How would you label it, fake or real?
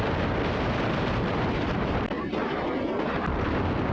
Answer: real